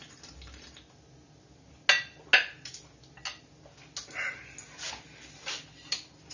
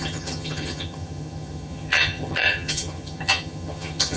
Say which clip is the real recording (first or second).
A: first